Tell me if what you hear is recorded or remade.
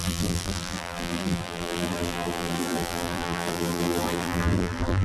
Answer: remade